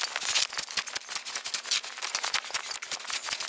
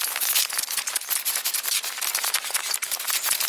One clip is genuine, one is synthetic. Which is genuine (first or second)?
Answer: first